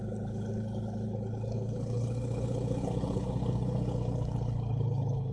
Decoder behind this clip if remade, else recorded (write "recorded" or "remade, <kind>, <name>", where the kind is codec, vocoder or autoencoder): remade, codec, HILCodec